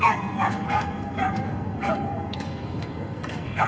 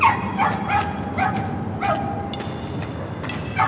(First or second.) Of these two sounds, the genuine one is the second